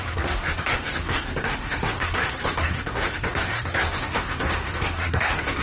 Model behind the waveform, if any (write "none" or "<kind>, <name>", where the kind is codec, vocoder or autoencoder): codec, SNAC